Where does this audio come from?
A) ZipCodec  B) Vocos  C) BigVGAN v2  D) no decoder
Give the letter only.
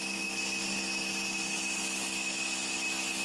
D